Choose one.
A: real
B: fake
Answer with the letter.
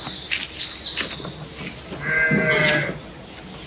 A